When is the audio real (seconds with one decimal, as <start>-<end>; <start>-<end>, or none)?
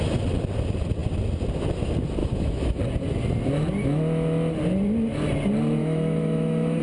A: 0.0-2.2; 2.8-5.8